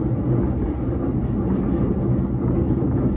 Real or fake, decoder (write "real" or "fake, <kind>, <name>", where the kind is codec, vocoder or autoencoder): real